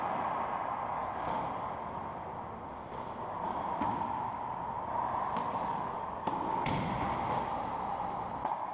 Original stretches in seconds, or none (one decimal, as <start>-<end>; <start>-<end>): 0.0-0.9; 1.7-5.4; 6.3-8.7